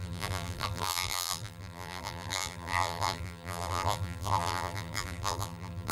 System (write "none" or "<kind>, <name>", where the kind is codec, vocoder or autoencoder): vocoder, BigVGAN v2